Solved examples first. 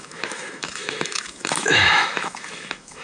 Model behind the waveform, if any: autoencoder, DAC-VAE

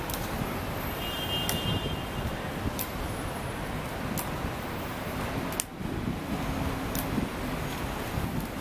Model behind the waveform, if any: none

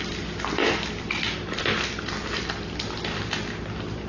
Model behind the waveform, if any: none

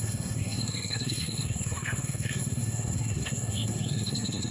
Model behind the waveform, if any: codec, SNAC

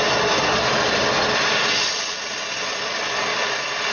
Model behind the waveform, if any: none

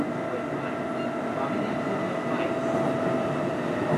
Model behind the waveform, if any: none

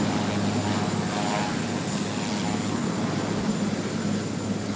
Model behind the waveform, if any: none